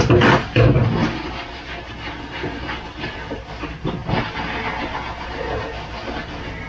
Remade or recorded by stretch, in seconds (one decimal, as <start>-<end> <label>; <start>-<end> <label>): 0.0-0.8 remade; 0.8-2.4 recorded; 2.4-4.0 remade; 4.0-5.2 recorded; 5.2-6.7 remade